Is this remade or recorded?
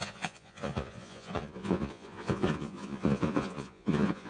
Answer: remade